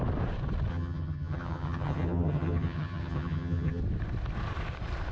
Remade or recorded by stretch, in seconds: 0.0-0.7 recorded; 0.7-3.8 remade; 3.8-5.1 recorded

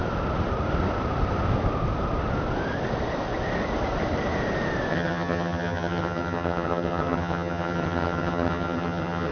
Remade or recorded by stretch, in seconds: 0.0-4.9 recorded; 4.9-9.3 remade

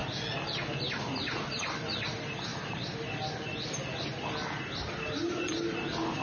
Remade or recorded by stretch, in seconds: 0.0-6.2 recorded